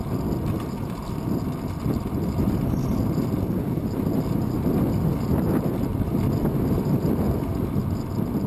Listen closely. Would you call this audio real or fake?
real